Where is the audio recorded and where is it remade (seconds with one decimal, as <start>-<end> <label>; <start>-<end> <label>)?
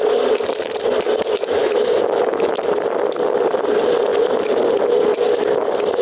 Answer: 0.0-1.6 recorded; 1.6-2.6 remade; 2.6-6.0 recorded